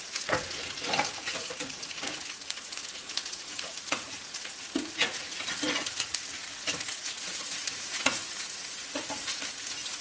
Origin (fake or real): fake